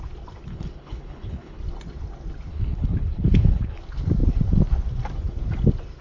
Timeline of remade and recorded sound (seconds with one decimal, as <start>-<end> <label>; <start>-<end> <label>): 0.0-0.5 recorded; 0.5-1.6 remade; 1.6-2.5 recorded; 2.5-3.8 remade; 3.8-6.0 recorded